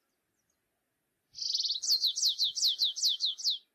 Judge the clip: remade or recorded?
recorded